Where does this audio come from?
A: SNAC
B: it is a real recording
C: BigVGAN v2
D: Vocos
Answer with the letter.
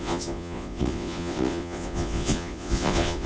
D